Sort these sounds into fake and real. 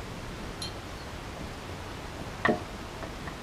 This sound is real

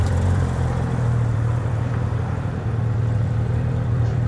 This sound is fake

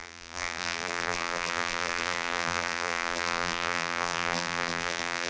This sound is fake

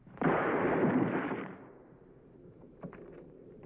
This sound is fake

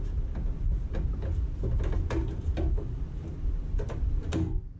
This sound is real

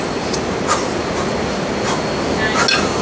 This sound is real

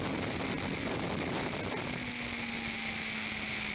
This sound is real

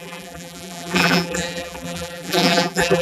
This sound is fake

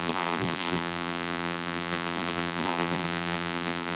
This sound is fake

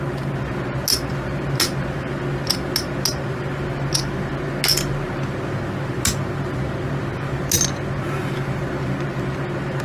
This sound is real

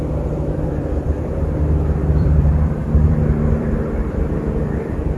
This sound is fake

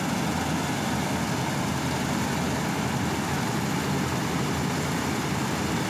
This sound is real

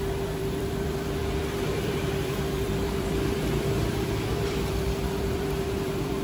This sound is fake